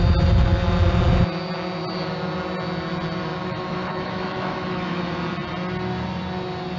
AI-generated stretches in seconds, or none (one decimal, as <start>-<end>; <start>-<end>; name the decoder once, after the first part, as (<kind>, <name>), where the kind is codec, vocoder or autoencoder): 3.3-5.0 (autoencoder, DAC-VAE)